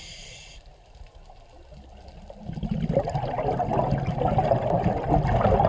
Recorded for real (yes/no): yes